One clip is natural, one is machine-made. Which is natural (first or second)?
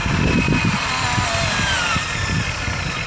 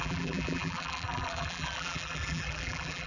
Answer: first